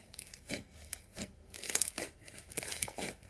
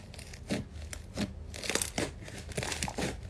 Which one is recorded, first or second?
second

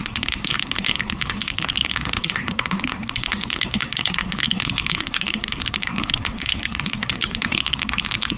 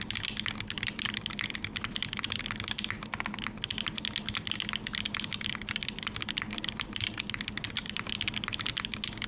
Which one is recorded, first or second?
second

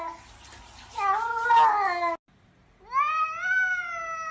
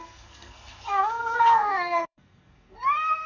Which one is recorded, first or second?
first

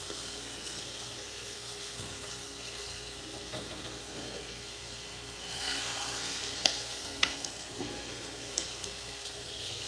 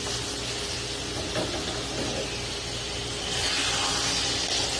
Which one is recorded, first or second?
second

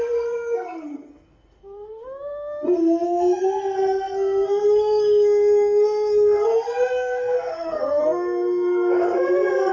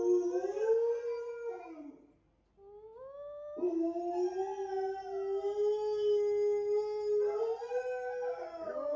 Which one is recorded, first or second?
second